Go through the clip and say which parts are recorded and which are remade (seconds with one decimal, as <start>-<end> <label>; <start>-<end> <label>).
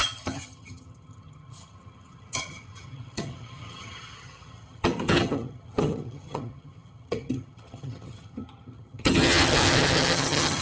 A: 0.0-10.6 remade